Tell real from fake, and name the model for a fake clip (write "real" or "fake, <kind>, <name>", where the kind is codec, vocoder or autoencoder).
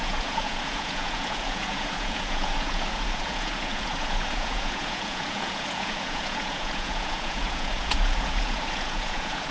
fake, vocoder, Vocos